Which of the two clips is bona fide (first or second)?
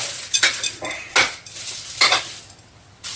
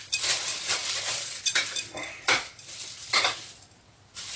first